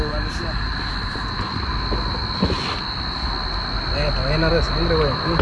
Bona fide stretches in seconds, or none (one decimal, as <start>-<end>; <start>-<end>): 0.0-1.1; 1.7-5.4